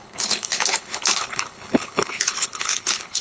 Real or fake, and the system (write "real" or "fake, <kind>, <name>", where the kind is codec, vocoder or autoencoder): fake, codec, HILCodec